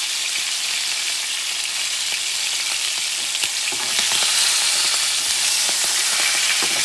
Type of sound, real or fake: real